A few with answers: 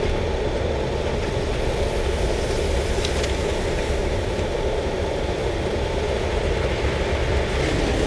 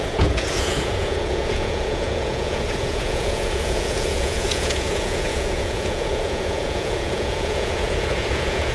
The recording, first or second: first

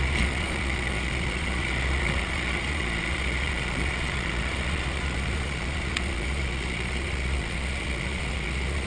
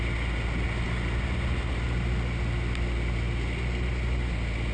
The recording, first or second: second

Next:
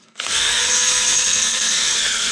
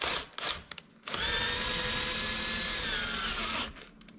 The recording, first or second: second